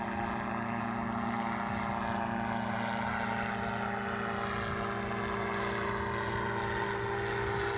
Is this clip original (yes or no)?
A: yes